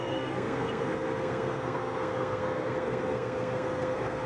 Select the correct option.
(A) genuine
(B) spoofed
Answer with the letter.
B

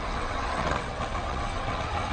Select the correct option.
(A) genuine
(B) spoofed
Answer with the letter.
B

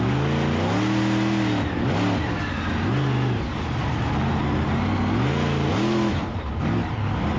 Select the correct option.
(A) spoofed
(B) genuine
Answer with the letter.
B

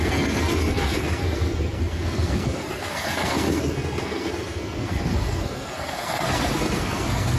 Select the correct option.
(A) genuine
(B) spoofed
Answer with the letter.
B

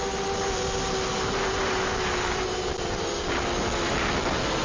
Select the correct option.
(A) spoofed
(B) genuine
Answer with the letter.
B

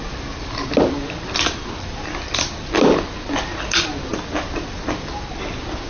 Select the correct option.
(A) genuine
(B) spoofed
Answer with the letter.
A